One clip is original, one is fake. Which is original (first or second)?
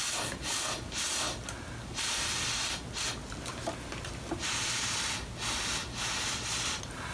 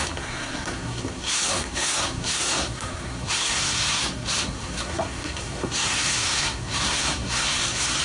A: first